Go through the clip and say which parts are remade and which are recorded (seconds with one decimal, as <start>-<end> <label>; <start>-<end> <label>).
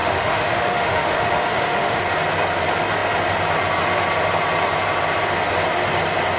0.0-2.0 remade; 2.0-6.4 recorded